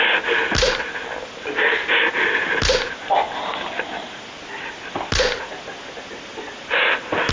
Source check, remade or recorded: recorded